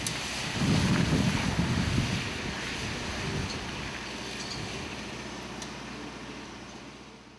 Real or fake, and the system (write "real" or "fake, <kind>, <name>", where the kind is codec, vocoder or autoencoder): real